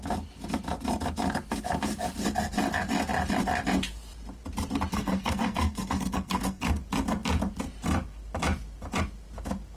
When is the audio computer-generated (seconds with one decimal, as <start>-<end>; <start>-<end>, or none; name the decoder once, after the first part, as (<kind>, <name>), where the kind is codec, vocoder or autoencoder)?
4.9-6.8 (codec, SNAC)